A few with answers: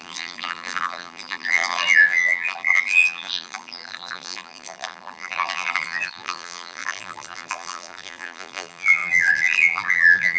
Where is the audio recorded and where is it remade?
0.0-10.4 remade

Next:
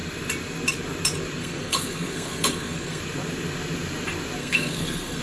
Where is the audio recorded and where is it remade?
0.0-1.4 recorded; 1.4-3.0 remade; 3.0-4.4 recorded; 4.4-5.2 remade